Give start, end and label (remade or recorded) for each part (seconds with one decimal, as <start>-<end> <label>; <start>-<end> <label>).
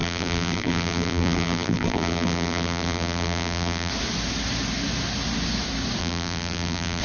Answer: 0.0-3.9 remade; 3.9-6.0 recorded; 6.0-7.0 remade